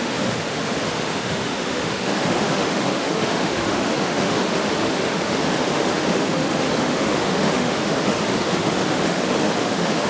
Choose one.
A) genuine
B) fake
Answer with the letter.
B